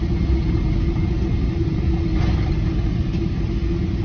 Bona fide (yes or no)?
yes